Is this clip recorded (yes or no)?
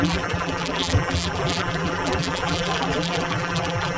no